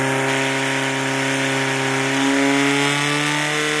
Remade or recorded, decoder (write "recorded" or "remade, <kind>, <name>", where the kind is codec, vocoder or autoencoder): recorded